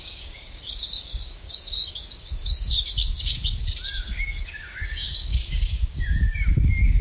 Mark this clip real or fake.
fake